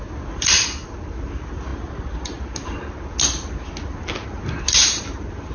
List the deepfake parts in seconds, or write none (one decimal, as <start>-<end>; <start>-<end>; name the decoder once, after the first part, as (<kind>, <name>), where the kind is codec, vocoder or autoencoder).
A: none